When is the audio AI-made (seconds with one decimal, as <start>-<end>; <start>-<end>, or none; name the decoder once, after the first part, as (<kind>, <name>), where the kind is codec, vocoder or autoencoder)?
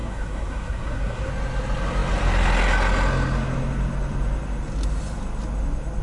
0.0-1.3 (codec, SNAC)